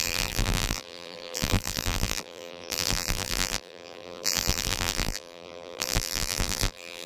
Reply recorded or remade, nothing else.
remade